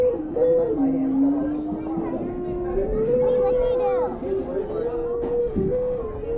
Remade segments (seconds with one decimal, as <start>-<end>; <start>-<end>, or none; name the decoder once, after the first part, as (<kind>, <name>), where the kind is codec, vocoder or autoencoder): 5.4-6.0 (autoencoder, DAC-VAE)